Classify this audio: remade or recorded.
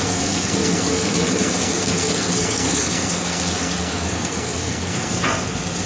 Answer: remade